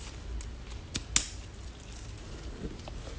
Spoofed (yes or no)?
no